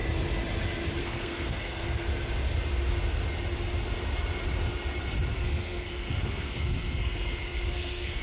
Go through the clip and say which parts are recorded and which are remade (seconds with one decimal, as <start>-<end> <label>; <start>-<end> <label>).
0.0-1.0 recorded; 1.0-2.1 remade; 2.1-5.3 recorded; 5.3-8.2 remade